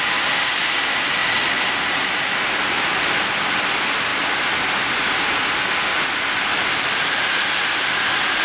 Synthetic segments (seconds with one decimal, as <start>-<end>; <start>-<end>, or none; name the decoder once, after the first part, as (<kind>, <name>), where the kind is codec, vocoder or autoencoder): none